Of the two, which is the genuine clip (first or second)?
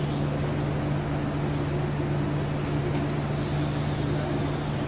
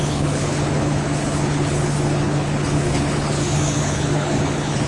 first